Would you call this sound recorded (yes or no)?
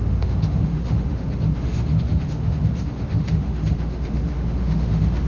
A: no